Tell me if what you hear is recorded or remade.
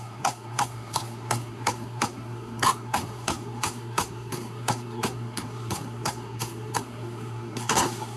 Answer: remade